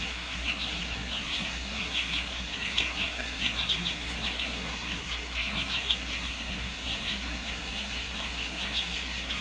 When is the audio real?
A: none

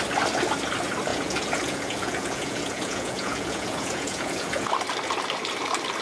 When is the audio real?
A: 0.0-1.1; 4.7-6.0

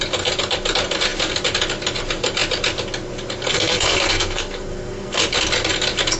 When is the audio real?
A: 0.0-3.5; 5.2-6.2

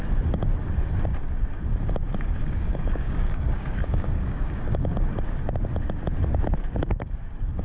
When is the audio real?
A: 0.0-2.4; 5.0-7.6

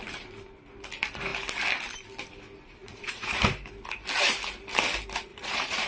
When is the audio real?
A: 0.0-2.8; 3.4-5.3

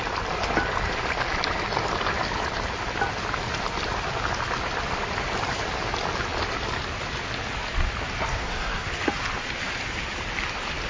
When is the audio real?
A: 0.0-8.3; 8.9-10.9

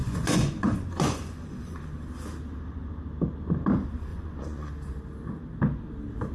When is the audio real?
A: 1.8-4.1; 4.7-6.3